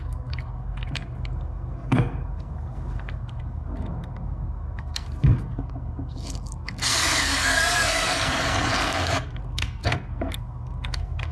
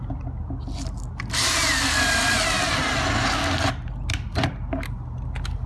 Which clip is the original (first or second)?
second